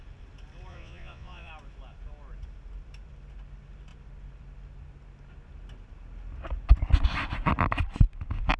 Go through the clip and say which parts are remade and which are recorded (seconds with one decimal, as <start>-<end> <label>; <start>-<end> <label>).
0.0-0.7 recorded; 0.7-1.5 remade; 1.5-8.6 recorded